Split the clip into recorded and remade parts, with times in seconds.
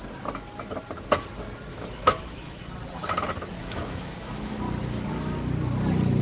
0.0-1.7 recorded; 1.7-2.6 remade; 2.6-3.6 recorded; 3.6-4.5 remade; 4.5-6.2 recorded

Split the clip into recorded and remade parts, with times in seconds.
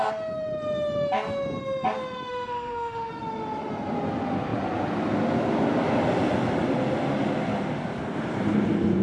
0.0-2.3 recorded; 2.3-3.1 remade; 3.1-9.0 recorded